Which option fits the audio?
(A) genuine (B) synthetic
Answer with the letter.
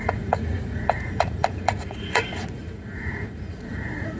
B